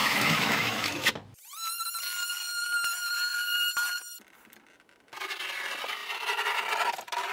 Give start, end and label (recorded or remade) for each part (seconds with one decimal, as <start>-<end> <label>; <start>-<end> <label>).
0.0-1.1 remade; 1.1-7.3 recorded